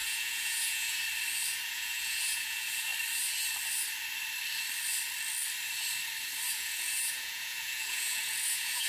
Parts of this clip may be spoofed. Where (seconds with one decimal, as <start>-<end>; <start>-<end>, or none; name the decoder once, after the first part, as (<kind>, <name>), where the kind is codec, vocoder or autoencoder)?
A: 0.0-1.0 (vocoder, Vocos); 1.7-2.9; 6.5-8.9